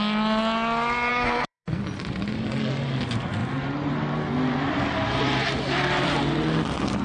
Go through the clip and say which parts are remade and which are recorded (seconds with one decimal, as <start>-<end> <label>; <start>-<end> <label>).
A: 0.0-1.1 recorded; 1.1-1.8 remade; 1.8-7.0 recorded